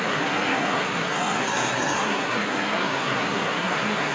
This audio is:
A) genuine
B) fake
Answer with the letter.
B